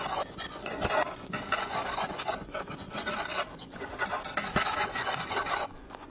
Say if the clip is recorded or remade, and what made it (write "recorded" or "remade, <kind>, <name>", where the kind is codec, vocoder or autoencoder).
remade, vocoder, Vocos